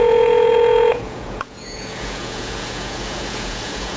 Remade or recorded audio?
remade